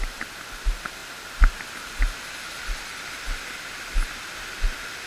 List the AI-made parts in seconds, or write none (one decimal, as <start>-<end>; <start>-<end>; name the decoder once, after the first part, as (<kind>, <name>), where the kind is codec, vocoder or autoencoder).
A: none